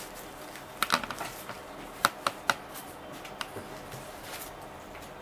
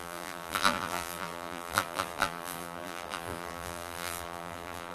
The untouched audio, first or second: first